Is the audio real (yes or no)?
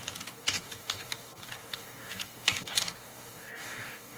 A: no